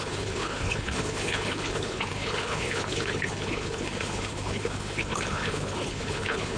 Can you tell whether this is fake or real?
fake